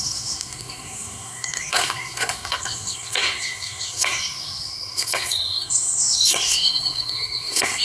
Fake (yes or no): yes